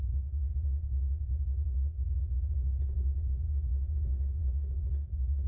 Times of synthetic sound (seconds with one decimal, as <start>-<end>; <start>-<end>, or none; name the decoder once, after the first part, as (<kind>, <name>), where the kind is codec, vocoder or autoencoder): 0.0-0.5 (codec, DAC); 2.4-3.7; 4.4-5.5